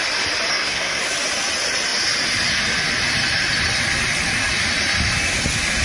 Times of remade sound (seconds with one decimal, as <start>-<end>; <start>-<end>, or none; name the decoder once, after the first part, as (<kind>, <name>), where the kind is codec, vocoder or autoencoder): 0.5-1.0 (codec, SNAC)